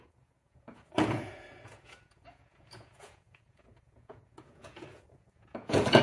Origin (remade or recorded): remade